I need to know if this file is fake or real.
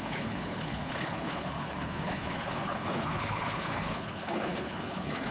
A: fake